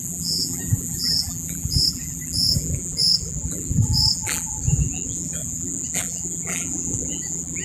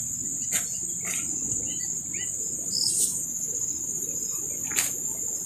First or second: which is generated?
first